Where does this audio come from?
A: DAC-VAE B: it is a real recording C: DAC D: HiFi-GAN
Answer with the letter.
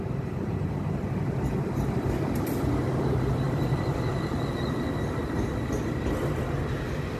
B